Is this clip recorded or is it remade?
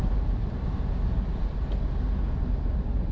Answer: recorded